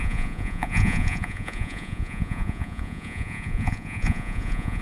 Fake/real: fake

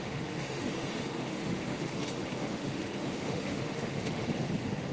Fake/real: fake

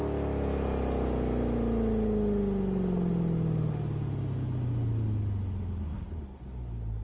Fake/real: real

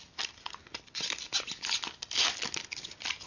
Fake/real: real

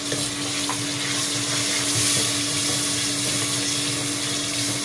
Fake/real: real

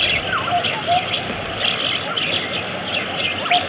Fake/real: real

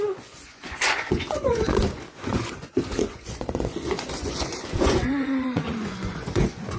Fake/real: fake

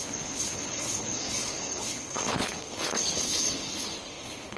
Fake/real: fake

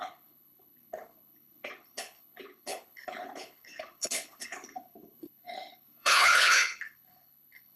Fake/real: fake